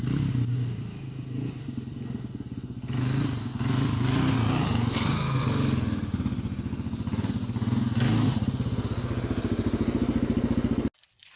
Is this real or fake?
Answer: real